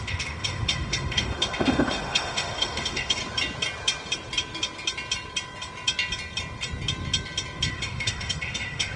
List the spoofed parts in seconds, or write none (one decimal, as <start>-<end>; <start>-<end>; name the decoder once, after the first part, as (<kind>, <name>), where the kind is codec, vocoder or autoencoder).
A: 0.0-3.2 (autoencoder, DAC-VAE); 7.7-9.0